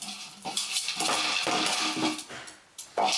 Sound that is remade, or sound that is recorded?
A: recorded